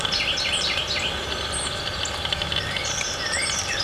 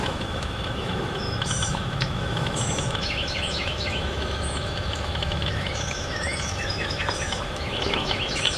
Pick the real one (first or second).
first